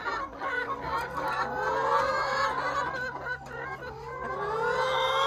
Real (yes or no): yes